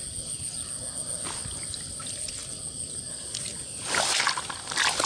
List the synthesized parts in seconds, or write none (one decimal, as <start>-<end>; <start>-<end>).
none